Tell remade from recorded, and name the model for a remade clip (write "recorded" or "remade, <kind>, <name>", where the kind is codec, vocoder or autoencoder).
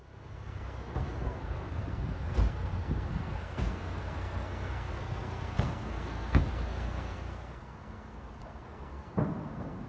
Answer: remade, codec, SNAC